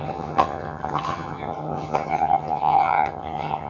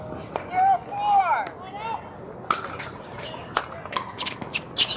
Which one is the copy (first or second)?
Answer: first